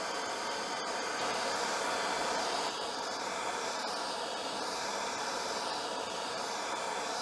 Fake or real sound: fake